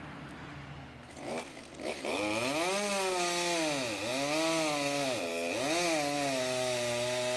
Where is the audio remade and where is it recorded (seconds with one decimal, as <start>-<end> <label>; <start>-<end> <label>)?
0.0-7.4 recorded